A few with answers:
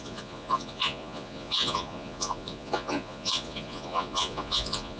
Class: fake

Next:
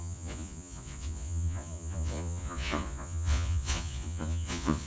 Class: fake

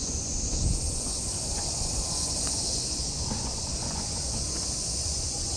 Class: fake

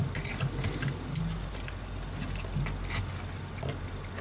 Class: real